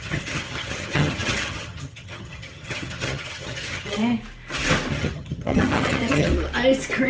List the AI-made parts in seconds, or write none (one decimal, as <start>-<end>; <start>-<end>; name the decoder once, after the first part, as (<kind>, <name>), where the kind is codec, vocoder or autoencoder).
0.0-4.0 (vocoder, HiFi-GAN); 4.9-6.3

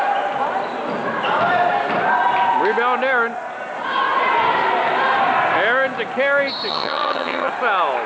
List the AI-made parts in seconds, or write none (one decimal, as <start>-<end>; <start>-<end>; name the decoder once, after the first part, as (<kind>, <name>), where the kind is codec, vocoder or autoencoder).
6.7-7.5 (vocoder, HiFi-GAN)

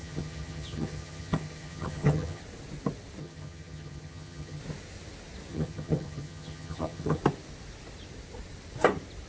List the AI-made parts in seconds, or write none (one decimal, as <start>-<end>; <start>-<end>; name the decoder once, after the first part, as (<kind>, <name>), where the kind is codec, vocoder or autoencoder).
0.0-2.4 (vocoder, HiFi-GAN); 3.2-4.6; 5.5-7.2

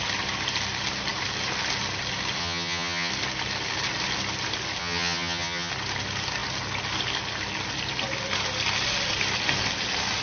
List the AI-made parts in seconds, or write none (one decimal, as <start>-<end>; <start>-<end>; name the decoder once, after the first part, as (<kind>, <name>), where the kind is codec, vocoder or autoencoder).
2.4-3.1 (vocoder, HiFi-GAN); 4.8-5.7

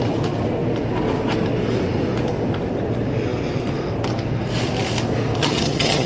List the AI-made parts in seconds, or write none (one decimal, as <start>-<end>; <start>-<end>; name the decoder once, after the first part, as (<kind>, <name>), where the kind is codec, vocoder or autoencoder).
5.4-6.1 (vocoder, HiFi-GAN)